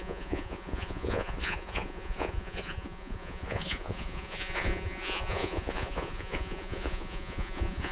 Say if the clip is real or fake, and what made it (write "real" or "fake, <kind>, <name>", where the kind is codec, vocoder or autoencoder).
fake, vocoder, Vocos